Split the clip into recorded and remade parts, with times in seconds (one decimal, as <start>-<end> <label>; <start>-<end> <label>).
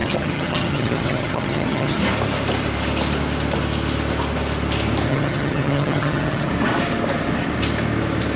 0.0-2.0 remade; 2.0-5.1 recorded; 5.1-6.5 remade; 6.5-8.4 recorded